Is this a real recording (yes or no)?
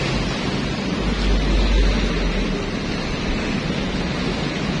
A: yes